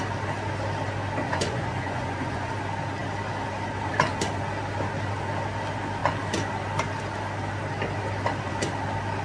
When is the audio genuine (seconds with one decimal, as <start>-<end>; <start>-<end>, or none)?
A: 0.0-1.2; 2.5-9.2